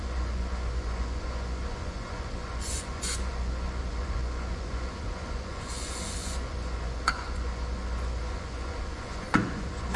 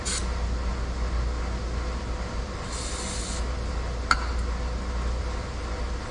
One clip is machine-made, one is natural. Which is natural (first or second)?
second